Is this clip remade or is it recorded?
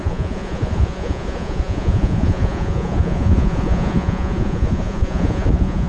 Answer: remade